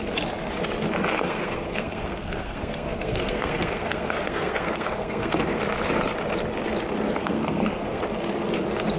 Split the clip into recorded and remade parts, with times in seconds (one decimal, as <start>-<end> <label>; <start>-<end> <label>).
0.0-1.1 recorded; 1.1-5.6 remade; 5.6-7.2 recorded; 7.2-8.0 remade; 8.0-9.0 recorded